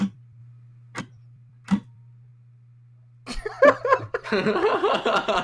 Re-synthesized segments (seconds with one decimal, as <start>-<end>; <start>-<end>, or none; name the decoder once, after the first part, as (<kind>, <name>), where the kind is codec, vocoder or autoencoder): 0.0-0.4 (vocoder, BigVGAN v2); 1.0-2.3; 4.0-5.4